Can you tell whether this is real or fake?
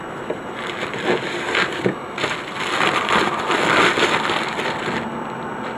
real